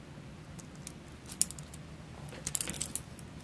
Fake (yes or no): no